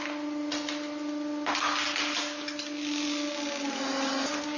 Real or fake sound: real